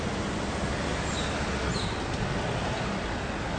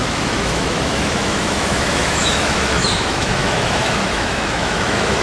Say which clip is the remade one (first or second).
second